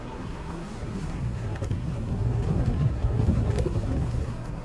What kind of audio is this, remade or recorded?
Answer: remade